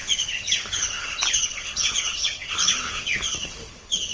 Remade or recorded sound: remade